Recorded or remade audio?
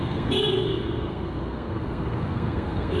remade